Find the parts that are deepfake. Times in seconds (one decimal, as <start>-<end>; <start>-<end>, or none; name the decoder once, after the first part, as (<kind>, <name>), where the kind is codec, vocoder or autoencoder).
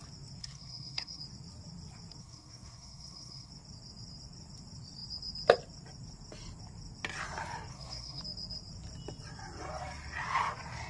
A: 0.4-1.2 (codec, SNAC); 2.2-3.5; 7.7-8.2